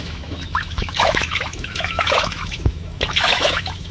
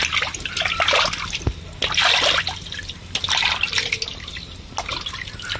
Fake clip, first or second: first